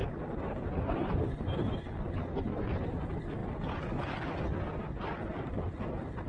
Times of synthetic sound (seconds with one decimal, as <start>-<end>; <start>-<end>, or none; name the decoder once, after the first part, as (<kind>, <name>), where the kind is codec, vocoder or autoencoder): none